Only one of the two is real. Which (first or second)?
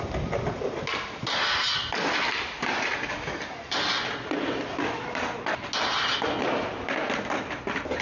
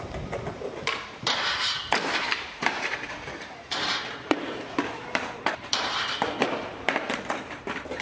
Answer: first